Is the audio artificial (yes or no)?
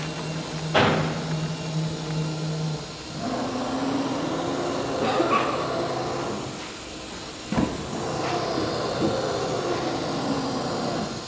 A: no